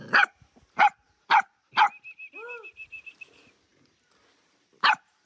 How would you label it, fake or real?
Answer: real